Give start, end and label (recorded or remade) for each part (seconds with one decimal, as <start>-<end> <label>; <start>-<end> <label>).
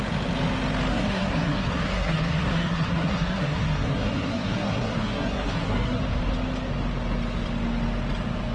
0.0-0.9 recorded; 0.9-6.0 remade; 6.0-8.5 recorded